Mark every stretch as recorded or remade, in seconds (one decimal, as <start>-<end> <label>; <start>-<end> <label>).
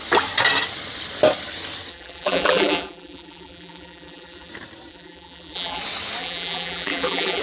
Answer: 0.0-1.9 recorded; 1.9-4.5 remade; 4.5-4.9 recorded; 4.9-5.8 remade; 5.8-6.2 recorded; 6.2-7.4 remade